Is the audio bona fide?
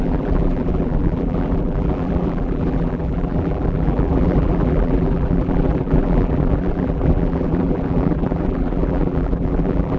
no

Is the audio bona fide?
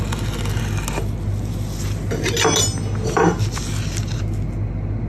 yes